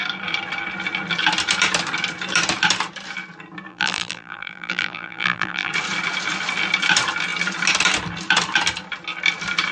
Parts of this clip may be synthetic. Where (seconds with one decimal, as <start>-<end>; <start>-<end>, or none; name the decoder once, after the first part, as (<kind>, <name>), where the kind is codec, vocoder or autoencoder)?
3.7-5.7 (vocoder, BigVGAN v2)